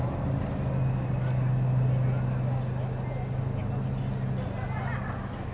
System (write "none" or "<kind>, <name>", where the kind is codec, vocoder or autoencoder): none